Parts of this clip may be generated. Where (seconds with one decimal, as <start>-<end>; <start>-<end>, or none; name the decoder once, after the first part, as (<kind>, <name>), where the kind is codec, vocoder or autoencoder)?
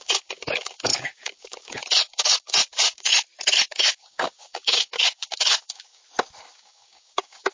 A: 0.0-3.1 (codec, DAC); 3.7-6.0; 6.5-7.5